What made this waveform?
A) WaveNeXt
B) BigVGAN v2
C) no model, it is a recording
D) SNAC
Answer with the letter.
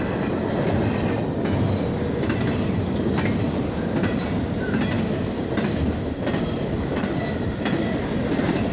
C